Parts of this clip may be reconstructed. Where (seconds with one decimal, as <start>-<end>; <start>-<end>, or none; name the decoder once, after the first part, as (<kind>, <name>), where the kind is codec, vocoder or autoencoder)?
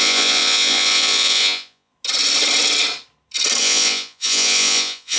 0.0-1.9 (vocoder, Vocos); 3.6-5.2